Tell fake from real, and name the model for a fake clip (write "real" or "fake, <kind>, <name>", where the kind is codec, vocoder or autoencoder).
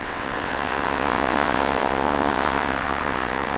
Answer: fake, vocoder, WaveNeXt